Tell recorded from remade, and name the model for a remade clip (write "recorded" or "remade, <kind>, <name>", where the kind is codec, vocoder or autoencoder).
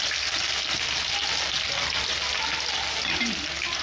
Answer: recorded